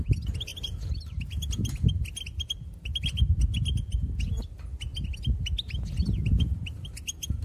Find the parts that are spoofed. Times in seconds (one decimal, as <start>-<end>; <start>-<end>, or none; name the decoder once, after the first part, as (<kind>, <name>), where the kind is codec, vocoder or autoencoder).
none